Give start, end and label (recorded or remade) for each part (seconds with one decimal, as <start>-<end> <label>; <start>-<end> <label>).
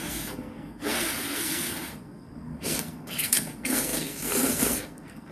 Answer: 0.0-5.3 remade